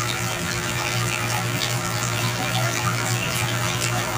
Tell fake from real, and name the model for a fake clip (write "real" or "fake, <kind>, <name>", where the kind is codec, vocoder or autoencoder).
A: fake, vocoder, BigVGAN v2